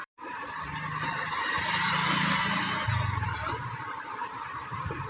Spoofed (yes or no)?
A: yes